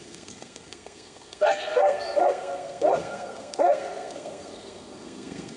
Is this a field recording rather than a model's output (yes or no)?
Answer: no